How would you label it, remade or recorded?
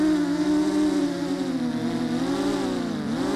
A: recorded